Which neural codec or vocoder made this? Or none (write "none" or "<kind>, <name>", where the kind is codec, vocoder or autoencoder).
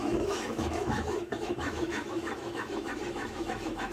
autoencoder, DAC-VAE